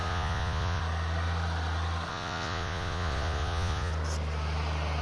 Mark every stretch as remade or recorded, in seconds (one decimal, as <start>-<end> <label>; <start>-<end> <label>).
0.0-0.8 remade; 0.8-2.1 recorded; 2.1-3.9 remade; 3.9-5.0 recorded